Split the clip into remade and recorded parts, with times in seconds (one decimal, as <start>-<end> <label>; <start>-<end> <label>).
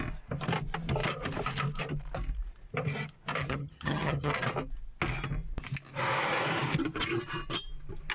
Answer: 0.0-3.4 recorded; 3.4-4.3 remade; 4.3-8.1 recorded